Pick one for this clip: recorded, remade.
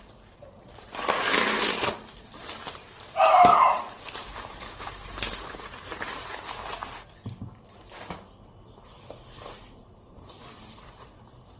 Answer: remade